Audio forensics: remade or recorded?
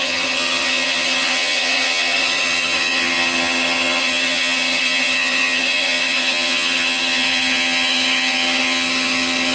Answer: remade